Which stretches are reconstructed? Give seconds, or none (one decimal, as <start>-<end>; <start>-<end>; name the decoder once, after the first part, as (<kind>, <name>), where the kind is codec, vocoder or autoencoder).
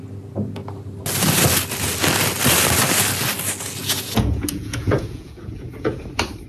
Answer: 3.8-6.0 (vocoder, Vocos)